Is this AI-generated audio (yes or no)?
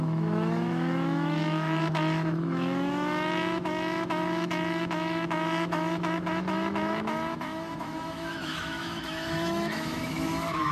yes